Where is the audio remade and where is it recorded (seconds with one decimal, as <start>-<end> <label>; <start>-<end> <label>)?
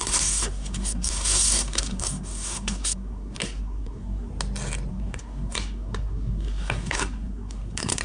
0.0-4.3 remade; 4.3-4.9 recorded; 4.9-8.0 remade